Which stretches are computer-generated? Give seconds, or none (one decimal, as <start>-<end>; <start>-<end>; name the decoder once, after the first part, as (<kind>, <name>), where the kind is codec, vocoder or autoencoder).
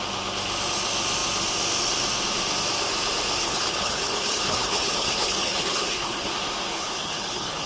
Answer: 3.4-6.3 (codec, HILCodec); 6.7-7.7